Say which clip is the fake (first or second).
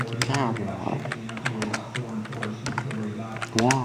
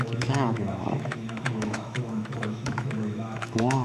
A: second